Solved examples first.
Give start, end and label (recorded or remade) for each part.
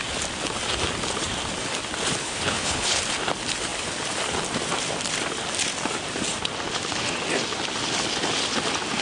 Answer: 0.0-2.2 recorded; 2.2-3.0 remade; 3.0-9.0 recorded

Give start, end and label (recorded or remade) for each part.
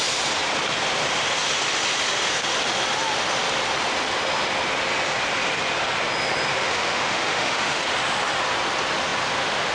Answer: 0.0-6.5 recorded; 6.5-7.8 remade; 7.8-9.7 recorded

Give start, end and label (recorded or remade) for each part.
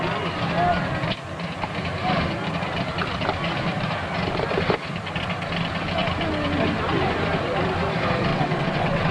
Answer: 0.0-8.3 recorded; 8.3-9.1 remade